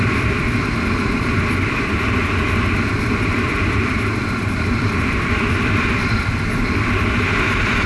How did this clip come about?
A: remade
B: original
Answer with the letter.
A